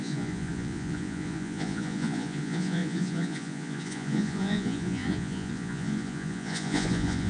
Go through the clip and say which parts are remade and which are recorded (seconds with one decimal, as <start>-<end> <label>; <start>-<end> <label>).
0.0-7.3 remade